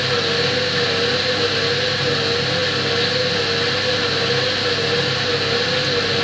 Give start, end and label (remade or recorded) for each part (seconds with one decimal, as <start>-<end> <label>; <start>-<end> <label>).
0.0-6.2 recorded